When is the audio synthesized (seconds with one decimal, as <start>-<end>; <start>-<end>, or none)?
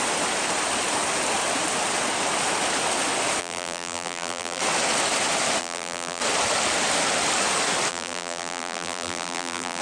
3.4-4.6; 5.6-6.2; 7.9-9.8